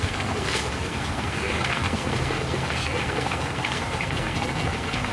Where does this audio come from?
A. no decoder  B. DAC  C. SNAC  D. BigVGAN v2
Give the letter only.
C